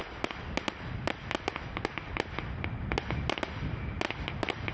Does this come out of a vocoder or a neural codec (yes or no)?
no